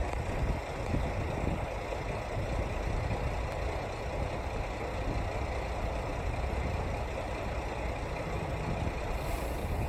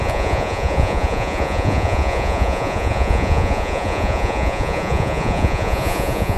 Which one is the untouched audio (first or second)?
first